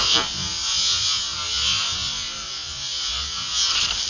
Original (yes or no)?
yes